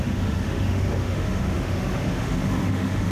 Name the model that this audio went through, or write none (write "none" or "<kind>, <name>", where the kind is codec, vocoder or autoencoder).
autoencoder, DAC-VAE